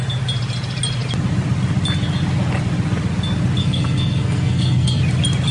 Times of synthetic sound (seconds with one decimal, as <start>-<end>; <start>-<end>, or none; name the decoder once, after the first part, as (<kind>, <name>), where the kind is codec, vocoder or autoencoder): 3.6-5.0 (codec, SNAC)

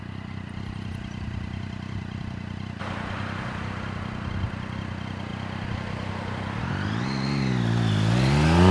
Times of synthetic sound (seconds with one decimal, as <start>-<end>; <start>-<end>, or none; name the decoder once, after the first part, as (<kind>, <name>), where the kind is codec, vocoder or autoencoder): none

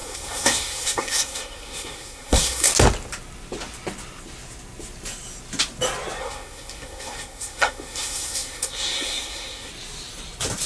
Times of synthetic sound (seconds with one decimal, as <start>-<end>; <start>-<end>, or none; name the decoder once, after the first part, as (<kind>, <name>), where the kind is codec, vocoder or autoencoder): 0.0-2.7 (codec, SNAC); 6.2-9.7

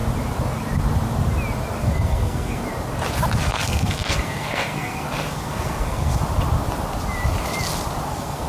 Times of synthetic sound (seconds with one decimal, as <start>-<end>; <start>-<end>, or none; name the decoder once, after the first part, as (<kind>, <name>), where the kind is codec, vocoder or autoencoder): 1.8-2.6 (codec, SNAC); 3.4-6.2; 8.1-8.5